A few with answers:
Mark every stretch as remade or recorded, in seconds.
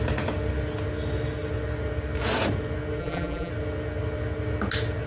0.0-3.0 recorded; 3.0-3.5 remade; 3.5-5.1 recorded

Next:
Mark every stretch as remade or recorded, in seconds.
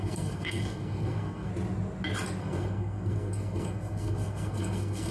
0.0-1.5 remade; 1.5-2.4 recorded; 2.4-5.1 remade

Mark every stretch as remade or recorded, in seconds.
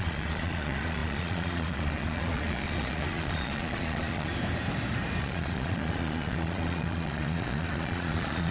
0.0-4.3 remade; 4.3-5.2 recorded; 5.2-8.5 remade